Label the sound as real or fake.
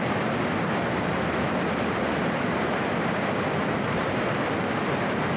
real